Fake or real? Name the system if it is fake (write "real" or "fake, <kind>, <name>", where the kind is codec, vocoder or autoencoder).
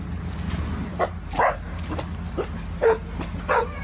real